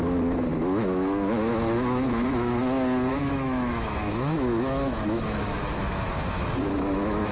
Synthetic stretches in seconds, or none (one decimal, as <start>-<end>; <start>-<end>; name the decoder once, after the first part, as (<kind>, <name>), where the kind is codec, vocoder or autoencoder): 0.0-2.6 (autoencoder, DAC-VAE); 3.1-7.3